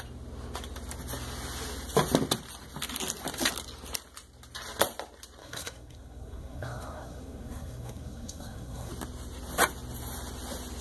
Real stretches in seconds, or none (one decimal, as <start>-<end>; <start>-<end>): 0.0-5.4; 8.9-10.8

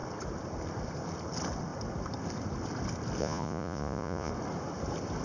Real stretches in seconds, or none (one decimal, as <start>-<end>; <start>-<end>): 0.0-3.2; 4.3-5.2